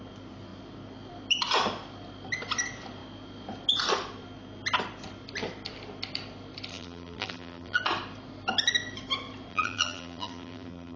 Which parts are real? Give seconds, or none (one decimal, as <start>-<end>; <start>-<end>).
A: 0.0-6.7; 7.8-9.5

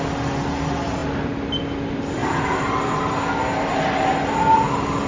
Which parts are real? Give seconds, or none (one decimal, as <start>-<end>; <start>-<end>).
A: 0.0-5.1

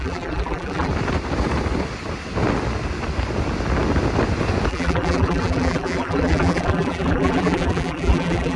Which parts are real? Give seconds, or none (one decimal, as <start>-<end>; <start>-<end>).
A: 0.9-4.7

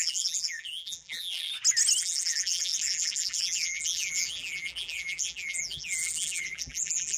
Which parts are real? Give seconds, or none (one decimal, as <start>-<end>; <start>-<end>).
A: 1.5-2.0

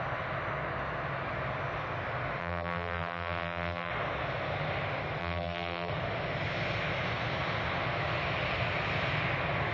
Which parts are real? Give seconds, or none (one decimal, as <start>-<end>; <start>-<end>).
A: 0.0-2.4; 3.9-5.2; 5.9-9.7

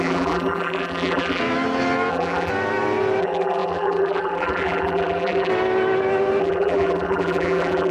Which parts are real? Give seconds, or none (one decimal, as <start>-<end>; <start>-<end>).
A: 1.4-2.1; 2.5-3.2; 5.5-6.4